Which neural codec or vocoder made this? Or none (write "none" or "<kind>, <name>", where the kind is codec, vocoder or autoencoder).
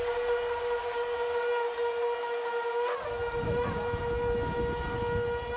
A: none